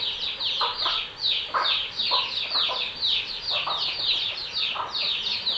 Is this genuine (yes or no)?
yes